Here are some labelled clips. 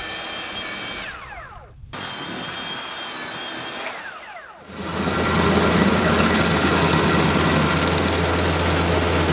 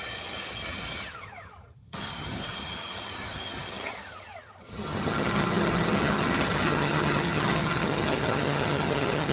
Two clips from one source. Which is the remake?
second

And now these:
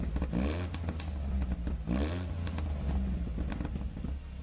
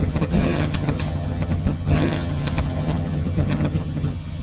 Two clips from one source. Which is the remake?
second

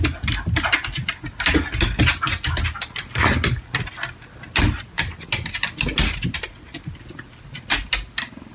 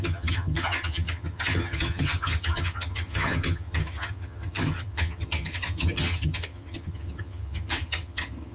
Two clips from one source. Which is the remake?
second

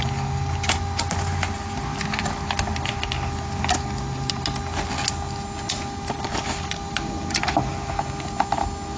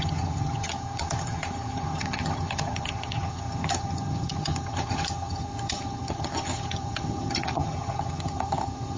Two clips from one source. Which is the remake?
second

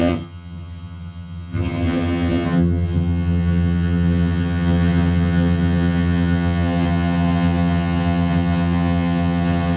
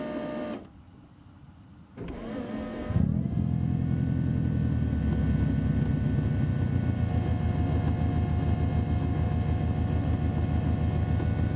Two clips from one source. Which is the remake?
first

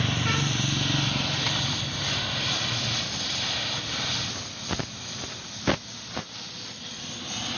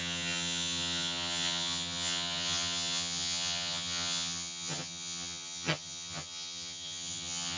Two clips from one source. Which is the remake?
second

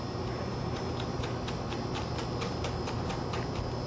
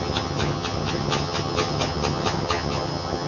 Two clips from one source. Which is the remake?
second